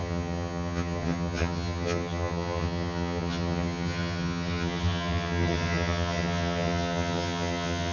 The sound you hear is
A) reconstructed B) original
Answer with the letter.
A